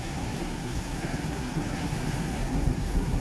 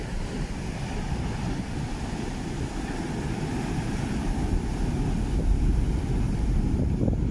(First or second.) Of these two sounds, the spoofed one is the first